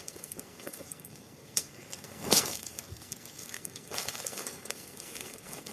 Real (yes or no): no